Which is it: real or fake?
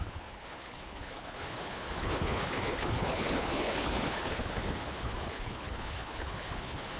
fake